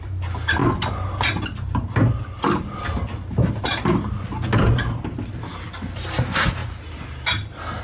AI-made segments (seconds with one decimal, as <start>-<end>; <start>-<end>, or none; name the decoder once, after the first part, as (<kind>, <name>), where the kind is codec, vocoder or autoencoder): none